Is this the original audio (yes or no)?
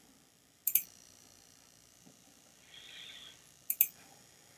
no